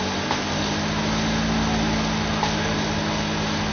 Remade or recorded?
recorded